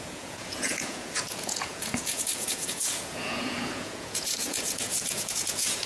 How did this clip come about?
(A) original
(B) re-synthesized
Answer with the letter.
B